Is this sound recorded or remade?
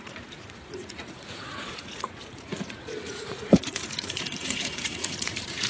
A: remade